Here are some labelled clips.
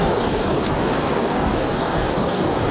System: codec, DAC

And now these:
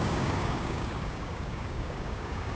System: codec, DAC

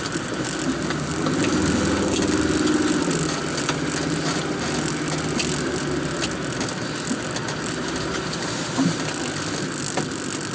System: none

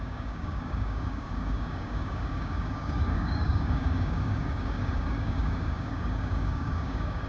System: codec, DAC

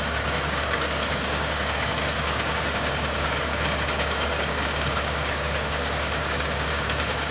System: codec, DAC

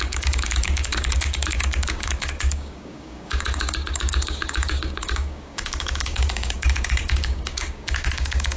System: codec, DAC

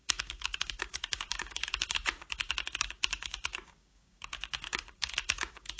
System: codec, DAC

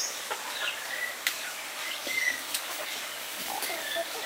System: codec, DAC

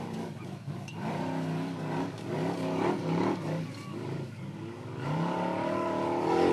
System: codec, DAC